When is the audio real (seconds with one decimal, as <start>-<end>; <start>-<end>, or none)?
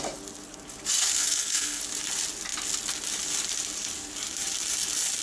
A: 0.0-1.0; 1.8-5.2